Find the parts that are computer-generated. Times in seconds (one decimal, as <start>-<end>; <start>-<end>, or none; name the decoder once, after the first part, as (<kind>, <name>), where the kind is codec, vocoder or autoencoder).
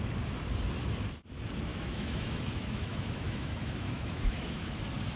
1.7-4.8 (autoencoder, DAC-VAE)